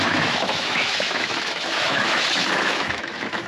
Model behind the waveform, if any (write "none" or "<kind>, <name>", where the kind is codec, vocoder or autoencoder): autoencoder, DAC-VAE